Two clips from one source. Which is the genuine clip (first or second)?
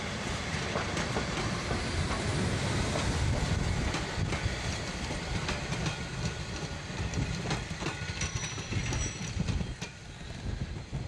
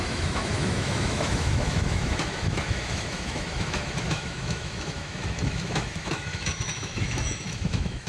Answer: first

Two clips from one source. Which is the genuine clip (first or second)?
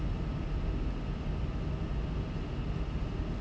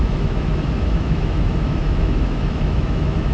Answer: first